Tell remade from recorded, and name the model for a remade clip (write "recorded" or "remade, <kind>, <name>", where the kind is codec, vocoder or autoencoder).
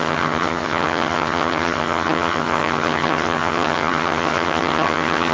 remade, vocoder, HiFi-GAN